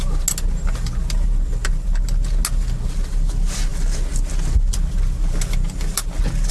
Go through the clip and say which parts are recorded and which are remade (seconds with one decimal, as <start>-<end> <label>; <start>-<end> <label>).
0.0-6.5 recorded